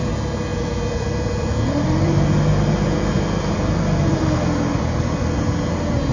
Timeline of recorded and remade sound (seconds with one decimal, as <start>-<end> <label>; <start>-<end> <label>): 0.0-0.5 recorded; 0.5-4.2 remade; 4.2-6.1 recorded